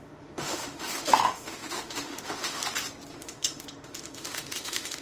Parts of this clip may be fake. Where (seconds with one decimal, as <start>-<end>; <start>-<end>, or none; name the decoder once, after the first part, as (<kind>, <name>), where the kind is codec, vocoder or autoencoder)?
0.0-2.6 (autoencoder, DAC-VAE); 3.1-5.0